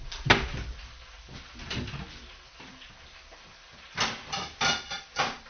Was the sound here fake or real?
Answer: real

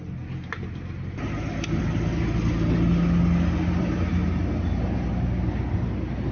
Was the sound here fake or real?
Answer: real